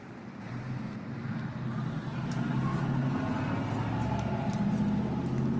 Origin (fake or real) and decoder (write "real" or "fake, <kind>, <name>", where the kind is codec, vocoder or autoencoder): real